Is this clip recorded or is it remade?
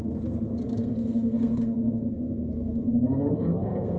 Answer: remade